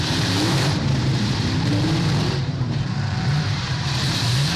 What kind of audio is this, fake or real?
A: fake